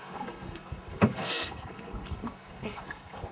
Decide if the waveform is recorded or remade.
remade